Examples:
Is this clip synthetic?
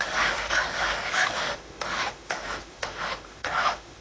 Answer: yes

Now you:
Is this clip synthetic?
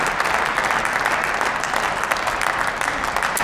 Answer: no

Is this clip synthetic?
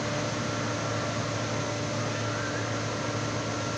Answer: no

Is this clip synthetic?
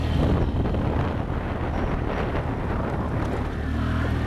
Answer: no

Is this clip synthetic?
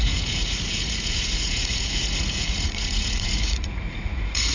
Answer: yes